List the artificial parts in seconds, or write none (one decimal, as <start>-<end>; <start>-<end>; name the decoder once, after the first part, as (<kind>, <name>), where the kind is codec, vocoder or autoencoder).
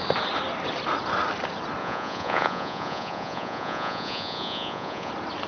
1.8-5.1 (vocoder, Vocos)